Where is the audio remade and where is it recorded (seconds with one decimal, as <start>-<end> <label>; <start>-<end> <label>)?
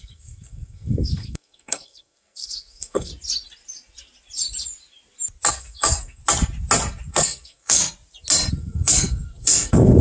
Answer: 0.0-3.1 remade; 3.1-5.5 recorded; 5.5-6.2 remade; 6.2-7.1 recorded; 7.1-7.8 remade; 7.8-8.5 recorded; 8.5-10.0 remade